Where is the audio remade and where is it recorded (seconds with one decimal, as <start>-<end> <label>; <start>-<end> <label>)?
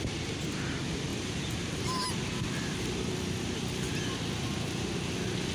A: 0.0-5.5 recorded